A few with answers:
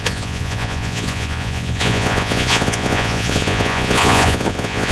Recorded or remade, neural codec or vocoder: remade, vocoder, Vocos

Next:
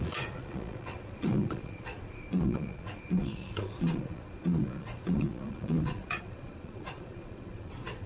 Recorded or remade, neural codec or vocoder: remade, vocoder, Vocos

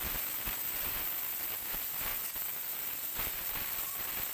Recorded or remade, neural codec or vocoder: recorded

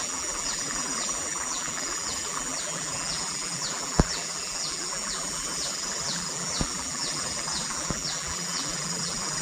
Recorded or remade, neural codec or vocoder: remade, vocoder, BigVGAN v2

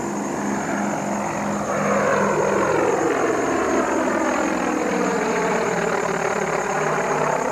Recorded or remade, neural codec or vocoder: recorded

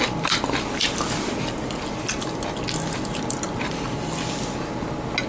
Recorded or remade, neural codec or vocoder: recorded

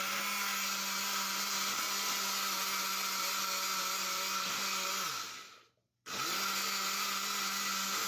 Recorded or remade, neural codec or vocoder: recorded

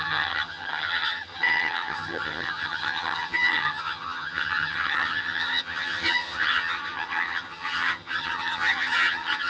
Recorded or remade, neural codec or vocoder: remade, vocoder, HiFi-GAN